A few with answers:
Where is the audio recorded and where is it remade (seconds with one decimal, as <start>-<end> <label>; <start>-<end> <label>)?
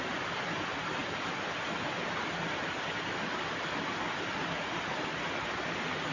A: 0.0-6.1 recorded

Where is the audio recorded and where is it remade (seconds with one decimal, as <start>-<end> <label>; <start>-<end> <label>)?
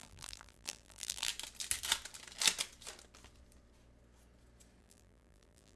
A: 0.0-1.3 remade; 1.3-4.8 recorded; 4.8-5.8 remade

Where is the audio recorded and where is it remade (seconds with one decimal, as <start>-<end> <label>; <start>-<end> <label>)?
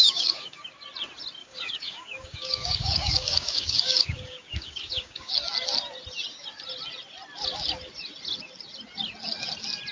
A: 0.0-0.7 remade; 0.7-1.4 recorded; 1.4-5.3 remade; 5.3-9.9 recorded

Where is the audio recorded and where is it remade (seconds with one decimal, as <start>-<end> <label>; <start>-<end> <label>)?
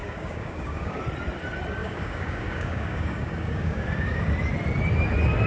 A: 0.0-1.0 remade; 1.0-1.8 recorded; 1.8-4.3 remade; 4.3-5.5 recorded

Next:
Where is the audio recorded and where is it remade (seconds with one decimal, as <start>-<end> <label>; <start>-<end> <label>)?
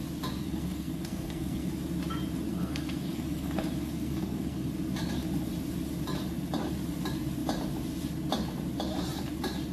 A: 0.0-0.4 recorded; 0.4-1.7 remade; 1.7-2.5 recorded; 2.5-4.7 remade; 4.7-9.7 recorded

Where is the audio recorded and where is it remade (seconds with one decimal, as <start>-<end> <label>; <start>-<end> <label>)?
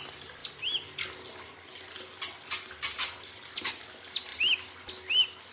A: 0.0-5.5 recorded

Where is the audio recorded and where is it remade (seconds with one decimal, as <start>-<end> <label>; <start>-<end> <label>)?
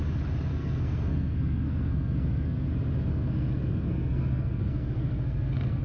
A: 0.0-0.5 recorded; 0.5-2.7 remade; 2.7-3.1 recorded; 3.1-5.8 remade